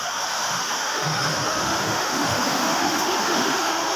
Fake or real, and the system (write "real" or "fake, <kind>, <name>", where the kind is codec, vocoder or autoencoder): fake, autoencoder, DAC-VAE